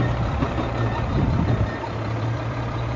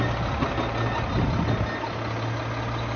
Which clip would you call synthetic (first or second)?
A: first